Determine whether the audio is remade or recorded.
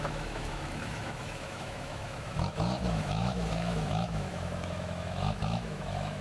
remade